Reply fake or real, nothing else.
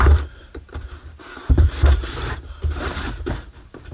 fake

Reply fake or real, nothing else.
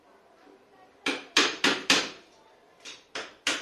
fake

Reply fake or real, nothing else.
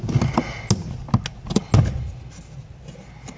real